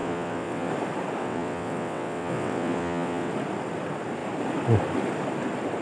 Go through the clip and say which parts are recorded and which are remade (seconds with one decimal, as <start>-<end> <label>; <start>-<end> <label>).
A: 0.0-0.7 remade; 0.7-1.2 recorded; 1.2-3.3 remade; 3.3-5.8 recorded